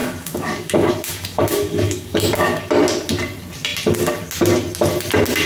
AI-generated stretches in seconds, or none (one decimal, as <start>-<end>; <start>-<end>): 0.0-2.6